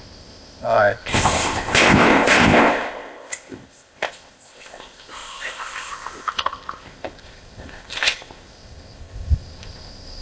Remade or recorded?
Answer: remade